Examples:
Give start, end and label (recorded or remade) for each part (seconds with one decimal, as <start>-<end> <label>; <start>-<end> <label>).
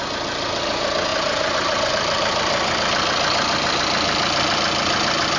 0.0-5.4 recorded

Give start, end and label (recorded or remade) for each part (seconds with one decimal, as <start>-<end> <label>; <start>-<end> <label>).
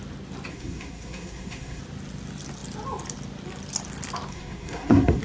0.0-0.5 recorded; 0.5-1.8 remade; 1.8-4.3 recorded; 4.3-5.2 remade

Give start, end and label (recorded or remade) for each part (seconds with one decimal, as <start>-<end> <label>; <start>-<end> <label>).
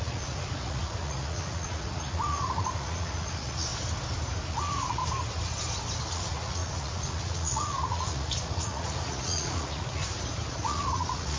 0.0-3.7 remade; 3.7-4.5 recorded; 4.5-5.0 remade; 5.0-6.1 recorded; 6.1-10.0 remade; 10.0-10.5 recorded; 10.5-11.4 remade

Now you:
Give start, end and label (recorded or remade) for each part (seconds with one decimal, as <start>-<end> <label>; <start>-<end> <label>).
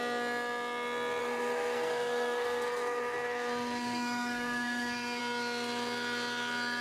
0.0-1.2 recorded; 1.2-5.2 remade; 5.2-6.8 recorded